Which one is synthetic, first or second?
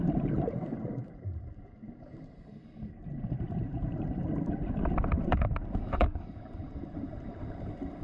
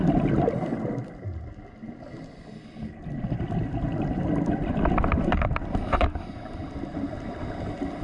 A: first